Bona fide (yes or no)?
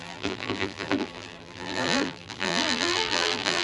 no